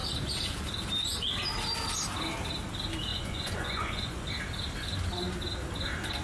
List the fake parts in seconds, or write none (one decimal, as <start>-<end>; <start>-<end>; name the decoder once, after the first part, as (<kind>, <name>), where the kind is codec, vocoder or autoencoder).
3.1-4.3 (vocoder, Vocos)